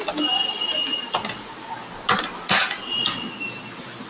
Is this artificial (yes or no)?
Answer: no